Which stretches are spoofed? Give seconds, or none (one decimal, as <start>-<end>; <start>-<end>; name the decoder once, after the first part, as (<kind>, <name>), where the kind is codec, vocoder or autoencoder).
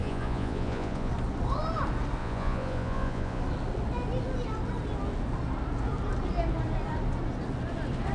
0.0-1.1 (vocoder, Vocos); 2.2-3.4